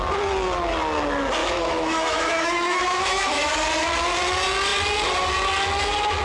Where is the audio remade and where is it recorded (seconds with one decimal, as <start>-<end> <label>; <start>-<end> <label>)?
0.0-1.4 recorded; 1.4-3.5 remade; 3.5-6.2 recorded

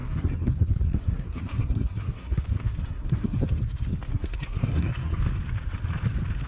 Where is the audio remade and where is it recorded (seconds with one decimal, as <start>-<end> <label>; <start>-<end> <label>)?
0.0-3.6 remade; 3.6-4.1 recorded; 4.1-5.2 remade; 5.2-6.5 recorded

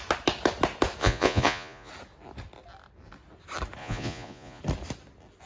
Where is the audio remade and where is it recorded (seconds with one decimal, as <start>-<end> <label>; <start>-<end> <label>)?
0.0-1.0 recorded; 1.0-1.9 remade; 1.9-3.8 recorded; 3.8-4.6 remade; 4.6-5.5 recorded

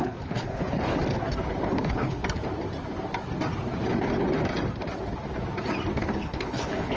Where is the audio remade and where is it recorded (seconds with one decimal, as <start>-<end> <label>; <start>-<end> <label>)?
0.0-0.9 remade; 0.9-1.7 recorded; 1.7-2.2 remade; 2.2-6.0 recorded; 6.0-7.0 remade